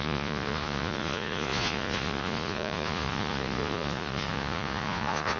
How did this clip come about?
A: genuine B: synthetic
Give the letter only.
B